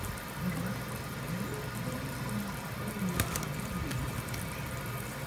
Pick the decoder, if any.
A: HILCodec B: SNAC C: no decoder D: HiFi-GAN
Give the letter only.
C